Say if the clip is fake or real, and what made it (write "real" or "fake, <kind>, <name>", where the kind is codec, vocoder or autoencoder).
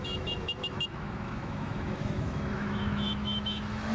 fake, autoencoder, DAC-VAE